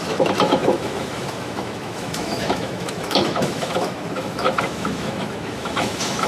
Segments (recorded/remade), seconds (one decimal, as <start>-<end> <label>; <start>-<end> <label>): 0.0-6.3 remade